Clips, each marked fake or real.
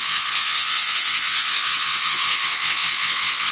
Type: fake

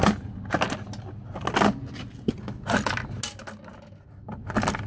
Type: real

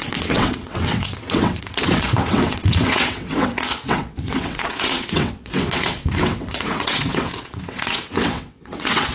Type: fake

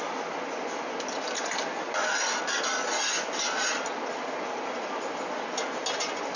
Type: real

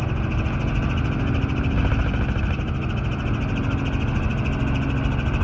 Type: real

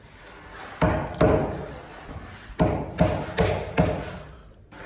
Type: real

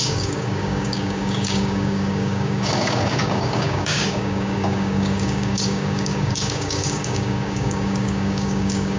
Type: fake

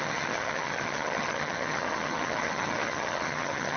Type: fake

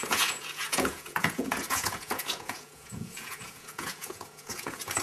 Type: fake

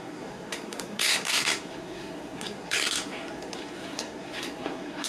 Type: fake